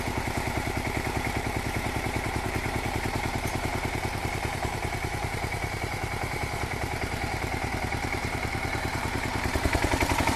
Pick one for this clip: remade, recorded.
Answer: remade